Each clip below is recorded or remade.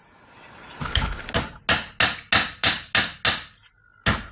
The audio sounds recorded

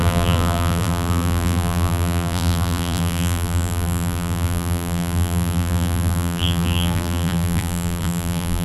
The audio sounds remade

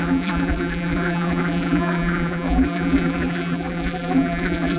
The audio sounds remade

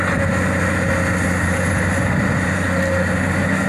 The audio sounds recorded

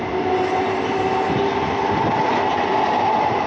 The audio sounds recorded